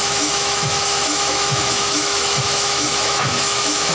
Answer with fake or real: fake